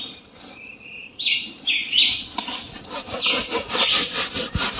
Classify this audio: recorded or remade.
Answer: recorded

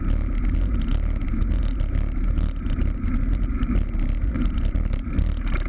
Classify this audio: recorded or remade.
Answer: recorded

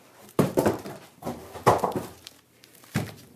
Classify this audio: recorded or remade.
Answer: remade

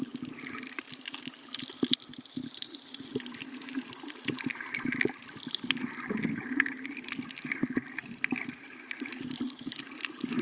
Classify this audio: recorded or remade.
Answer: recorded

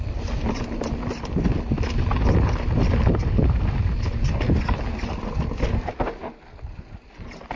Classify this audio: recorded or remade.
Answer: recorded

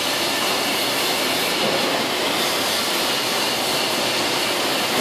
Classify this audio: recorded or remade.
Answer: recorded